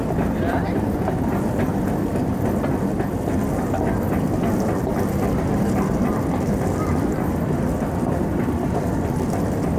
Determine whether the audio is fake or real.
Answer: fake